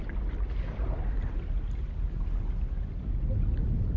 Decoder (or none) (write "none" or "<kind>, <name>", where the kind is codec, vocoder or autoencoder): none